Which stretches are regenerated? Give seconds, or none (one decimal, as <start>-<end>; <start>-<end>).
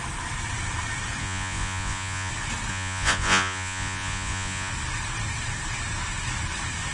1.2-2.3; 2.7-4.7